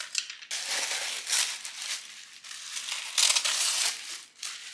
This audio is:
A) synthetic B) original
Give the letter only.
B